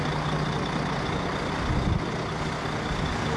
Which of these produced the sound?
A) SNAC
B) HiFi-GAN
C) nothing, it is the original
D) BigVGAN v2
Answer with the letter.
C